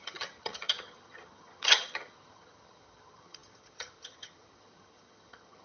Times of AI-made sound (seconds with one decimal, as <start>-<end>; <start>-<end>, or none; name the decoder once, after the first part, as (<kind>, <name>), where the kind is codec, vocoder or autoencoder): 0.0-5.6 (vocoder, HiFi-GAN)